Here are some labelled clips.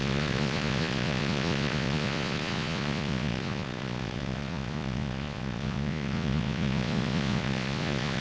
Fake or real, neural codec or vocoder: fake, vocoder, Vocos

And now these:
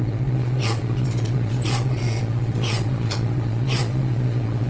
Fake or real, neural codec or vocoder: fake, vocoder, Vocos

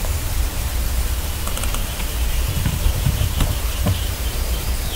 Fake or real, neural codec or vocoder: fake, vocoder, BigVGAN v2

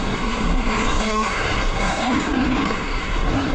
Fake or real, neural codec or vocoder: fake, codec, SNAC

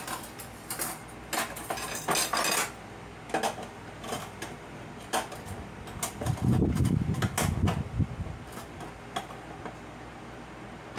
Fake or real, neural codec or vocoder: real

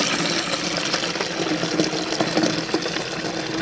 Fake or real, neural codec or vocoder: real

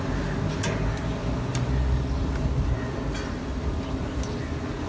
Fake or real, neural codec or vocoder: real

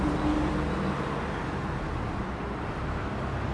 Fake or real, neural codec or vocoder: real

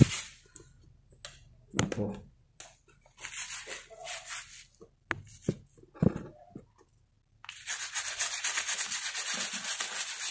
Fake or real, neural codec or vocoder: real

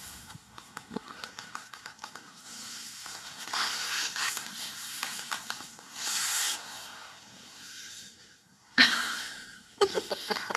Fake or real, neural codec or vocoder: fake, codec, SNAC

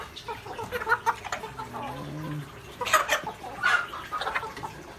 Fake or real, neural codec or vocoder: real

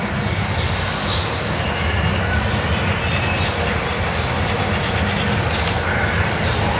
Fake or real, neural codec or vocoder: real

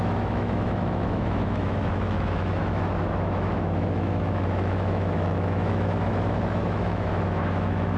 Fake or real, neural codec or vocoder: fake, autoencoder, DAC-VAE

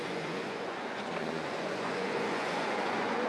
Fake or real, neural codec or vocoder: fake, vocoder, Vocos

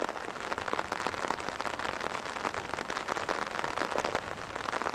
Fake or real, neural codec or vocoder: real